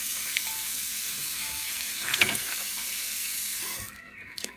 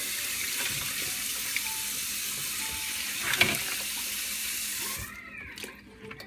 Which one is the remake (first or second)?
first